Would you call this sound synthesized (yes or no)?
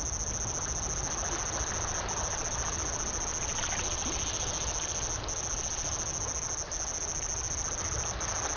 no